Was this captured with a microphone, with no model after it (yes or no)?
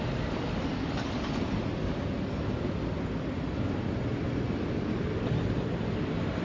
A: yes